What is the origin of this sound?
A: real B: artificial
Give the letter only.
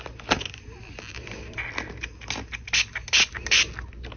A